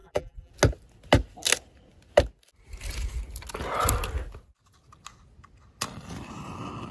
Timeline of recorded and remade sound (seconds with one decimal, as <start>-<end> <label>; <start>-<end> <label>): 0.0-0.5 remade; 0.5-6.9 recorded